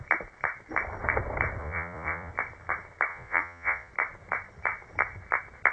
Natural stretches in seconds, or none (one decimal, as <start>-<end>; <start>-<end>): 0.0-1.6; 2.3-3.1; 3.9-5.7